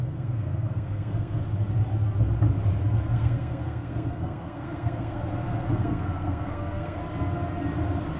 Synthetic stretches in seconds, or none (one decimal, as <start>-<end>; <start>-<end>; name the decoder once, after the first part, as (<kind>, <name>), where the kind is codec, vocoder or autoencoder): 0.0-1.4 (codec, SNAC); 2.9-5.2; 5.7-7.0